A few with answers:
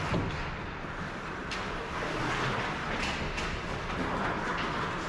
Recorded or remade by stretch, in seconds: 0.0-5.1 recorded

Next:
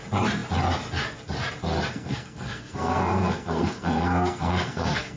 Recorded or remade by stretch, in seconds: 0.0-1.9 recorded; 1.9-5.2 remade

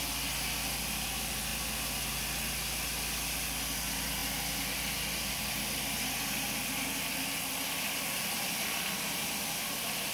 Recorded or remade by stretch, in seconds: 0.0-10.1 recorded

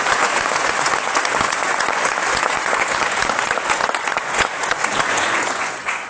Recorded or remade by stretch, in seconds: 0.0-6.1 remade

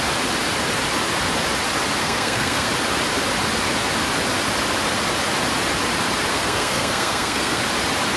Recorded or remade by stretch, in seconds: 0.0-2.0 recorded; 2.0-2.7 remade; 2.7-6.3 recorded; 6.3-7.6 remade; 7.6-8.2 recorded

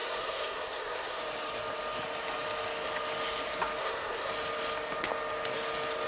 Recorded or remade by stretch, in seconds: 0.0-1.2 remade; 1.2-3.8 recorded; 3.8-4.3 remade; 4.3-6.1 recorded

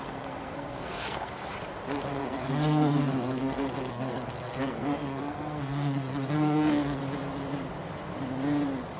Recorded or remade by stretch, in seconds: 0.0-1.4 remade; 1.4-2.2 recorded; 2.2-7.0 remade; 7.0-9.0 recorded